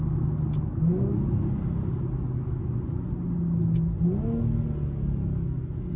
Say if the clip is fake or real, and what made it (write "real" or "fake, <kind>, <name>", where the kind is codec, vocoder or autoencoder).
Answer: real